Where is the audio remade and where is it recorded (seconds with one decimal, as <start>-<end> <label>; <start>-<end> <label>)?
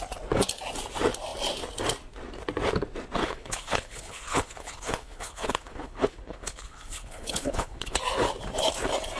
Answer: 0.0-3.2 recorded; 3.2-8.0 remade; 8.0-9.2 recorded